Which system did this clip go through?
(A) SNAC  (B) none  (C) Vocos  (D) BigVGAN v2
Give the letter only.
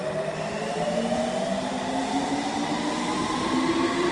B